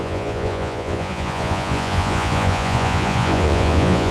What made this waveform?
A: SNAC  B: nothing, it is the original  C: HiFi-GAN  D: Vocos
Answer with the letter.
D